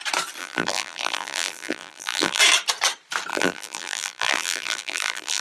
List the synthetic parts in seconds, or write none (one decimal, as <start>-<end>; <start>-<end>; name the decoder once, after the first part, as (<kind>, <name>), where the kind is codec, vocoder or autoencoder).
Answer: 0.4-2.4 (vocoder, BigVGAN v2); 3.3-5.4